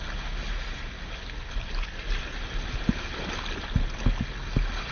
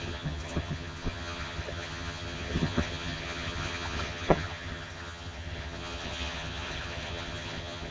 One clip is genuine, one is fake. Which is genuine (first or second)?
first